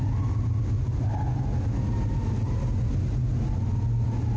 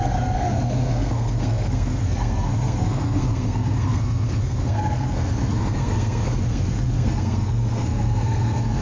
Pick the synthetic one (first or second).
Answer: second